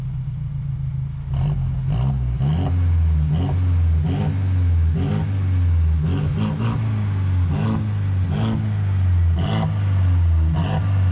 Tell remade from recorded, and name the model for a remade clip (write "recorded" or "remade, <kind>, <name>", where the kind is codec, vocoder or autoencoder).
recorded